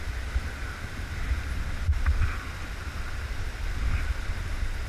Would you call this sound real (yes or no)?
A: yes